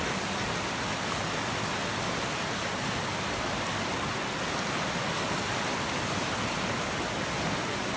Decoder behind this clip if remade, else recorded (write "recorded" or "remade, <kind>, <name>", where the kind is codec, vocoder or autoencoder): recorded